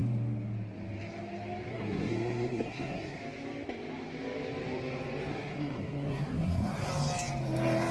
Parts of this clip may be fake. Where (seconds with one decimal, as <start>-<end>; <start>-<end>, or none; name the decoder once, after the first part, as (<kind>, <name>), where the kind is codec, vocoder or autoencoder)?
1.7-3.2 (codec, SNAC); 5.3-6.9